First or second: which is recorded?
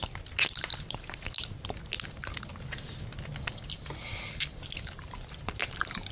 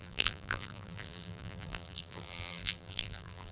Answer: first